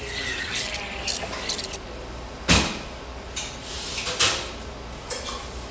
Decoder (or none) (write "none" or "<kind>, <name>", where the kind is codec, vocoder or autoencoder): none